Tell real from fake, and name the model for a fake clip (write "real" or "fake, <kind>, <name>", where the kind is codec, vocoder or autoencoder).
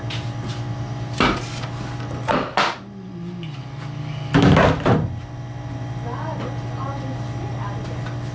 real